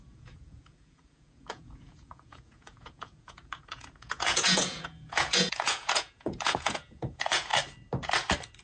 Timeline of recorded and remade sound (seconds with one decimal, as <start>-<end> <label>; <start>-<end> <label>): 0.0-7.5 remade; 7.5-8.6 recorded

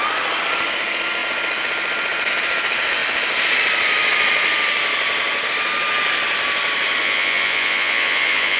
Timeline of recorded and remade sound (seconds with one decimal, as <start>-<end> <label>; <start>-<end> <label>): 0.0-7.0 recorded; 7.0-8.6 remade

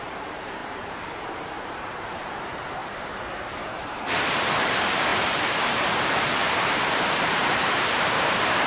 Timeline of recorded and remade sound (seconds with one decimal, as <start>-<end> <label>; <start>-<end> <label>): 0.0-8.7 remade

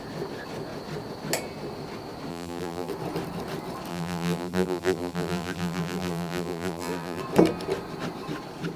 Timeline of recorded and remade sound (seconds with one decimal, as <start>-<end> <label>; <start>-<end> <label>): 0.0-2.3 recorded; 2.3-2.9 remade; 2.9-3.9 recorded; 3.9-7.2 remade; 7.2-8.8 recorded